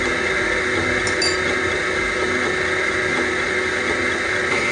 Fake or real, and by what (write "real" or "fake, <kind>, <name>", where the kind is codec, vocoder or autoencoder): real